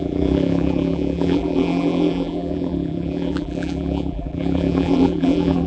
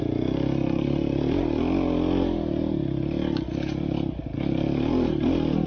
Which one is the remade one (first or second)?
first